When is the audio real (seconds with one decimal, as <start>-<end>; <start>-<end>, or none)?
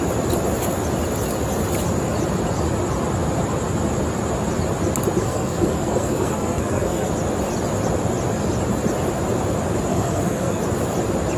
0.0-5.2; 7.1-9.9; 10.6-11.4